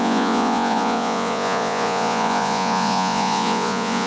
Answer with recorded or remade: remade